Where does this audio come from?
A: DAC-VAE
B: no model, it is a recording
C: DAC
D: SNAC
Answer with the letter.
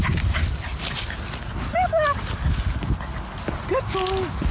B